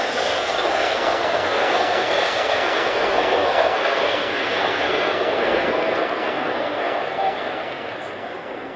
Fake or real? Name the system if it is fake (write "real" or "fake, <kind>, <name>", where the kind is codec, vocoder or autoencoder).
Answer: fake, codec, SNAC